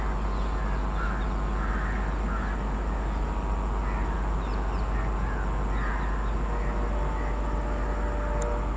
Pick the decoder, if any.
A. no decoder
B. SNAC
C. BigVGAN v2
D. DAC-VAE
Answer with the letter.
A